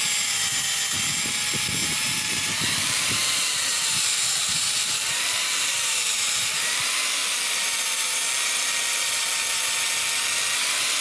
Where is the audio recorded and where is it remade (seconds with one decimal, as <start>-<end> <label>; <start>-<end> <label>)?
0.0-1.8 recorded; 1.8-6.8 remade; 6.8-11.0 recorded